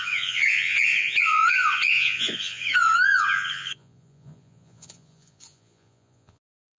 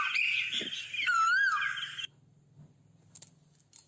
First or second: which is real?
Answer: second